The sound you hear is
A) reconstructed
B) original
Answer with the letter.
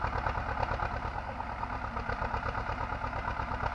B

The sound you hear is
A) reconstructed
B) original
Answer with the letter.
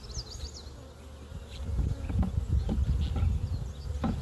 B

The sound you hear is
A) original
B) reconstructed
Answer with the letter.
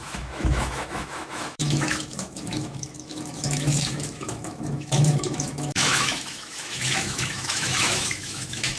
B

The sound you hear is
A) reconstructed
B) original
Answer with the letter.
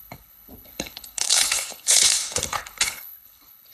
A